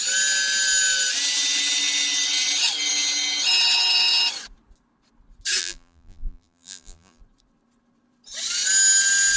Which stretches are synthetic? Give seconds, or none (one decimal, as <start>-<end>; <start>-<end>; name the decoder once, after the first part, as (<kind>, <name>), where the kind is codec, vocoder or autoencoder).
5.6-7.2 (vocoder, BigVGAN v2)

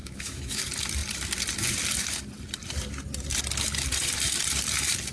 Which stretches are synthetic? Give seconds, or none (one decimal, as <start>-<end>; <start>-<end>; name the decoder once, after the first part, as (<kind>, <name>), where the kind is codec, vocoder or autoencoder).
0.0-0.6 (autoencoder, DAC-VAE)

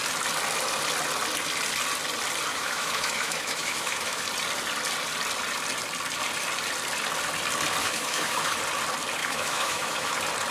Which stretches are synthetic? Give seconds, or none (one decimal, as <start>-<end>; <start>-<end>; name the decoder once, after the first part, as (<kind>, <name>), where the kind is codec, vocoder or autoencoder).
2.5-4.2 (autoencoder, DAC-VAE); 7.8-8.6; 9.2-10.1

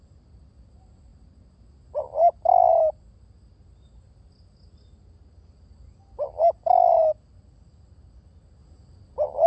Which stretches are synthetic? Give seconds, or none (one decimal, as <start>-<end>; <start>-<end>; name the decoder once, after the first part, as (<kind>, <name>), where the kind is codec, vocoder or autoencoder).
none

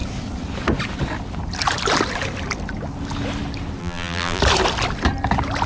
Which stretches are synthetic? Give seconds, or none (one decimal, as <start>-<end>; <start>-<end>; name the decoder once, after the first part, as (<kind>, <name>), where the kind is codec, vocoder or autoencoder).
3.8-4.4 (vocoder, BigVGAN v2)

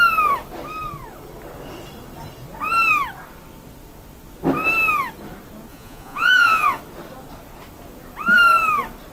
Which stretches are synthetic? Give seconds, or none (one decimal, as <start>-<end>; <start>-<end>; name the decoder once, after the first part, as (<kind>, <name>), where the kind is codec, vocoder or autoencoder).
5.7-6.8 (vocoder, Vocos)